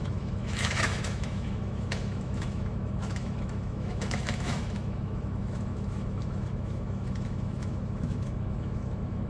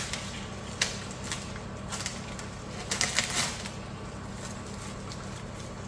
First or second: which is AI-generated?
first